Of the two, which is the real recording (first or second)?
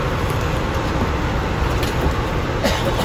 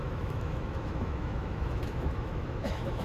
first